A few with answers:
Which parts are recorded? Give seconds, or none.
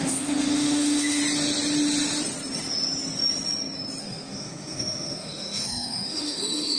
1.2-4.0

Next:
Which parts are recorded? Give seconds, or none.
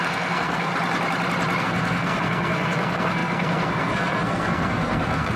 0.7-1.6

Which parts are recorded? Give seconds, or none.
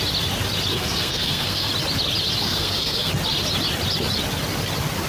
0.0-0.7; 1.7-2.4; 3.1-5.1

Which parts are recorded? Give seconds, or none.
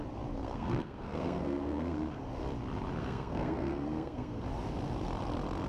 0.0-0.4; 2.3-3.0; 4.4-5.7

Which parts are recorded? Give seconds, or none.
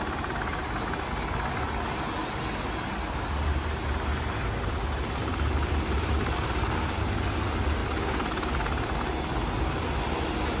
0.0-5.2; 6.7-10.6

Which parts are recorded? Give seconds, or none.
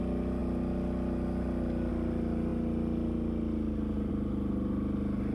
0.0-5.3